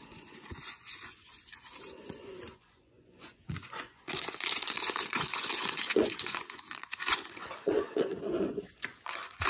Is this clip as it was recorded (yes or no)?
no